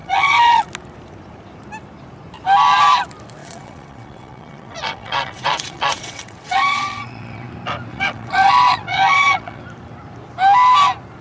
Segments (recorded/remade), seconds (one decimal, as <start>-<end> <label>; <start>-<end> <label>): 0.0-0.7 remade; 0.7-3.4 recorded; 3.4-7.5 remade; 7.5-7.9 recorded; 7.9-9.6 remade; 9.6-11.2 recorded